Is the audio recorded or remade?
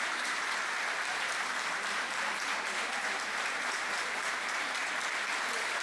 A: remade